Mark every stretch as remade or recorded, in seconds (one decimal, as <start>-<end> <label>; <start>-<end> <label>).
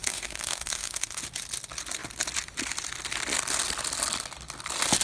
0.0-1.2 remade; 1.2-5.0 recorded